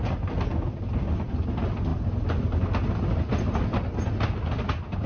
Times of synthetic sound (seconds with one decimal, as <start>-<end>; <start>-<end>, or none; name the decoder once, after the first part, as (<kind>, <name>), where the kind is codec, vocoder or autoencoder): none